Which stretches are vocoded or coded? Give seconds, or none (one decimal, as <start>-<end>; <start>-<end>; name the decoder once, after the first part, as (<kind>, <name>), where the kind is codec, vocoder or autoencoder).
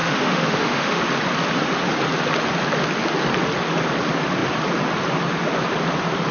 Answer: 0.0-1.0 (autoencoder, DAC-VAE)